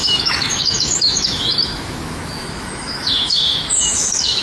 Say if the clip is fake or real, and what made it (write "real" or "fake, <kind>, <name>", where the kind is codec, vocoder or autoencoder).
fake, autoencoder, DAC-VAE